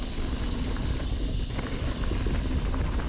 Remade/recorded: recorded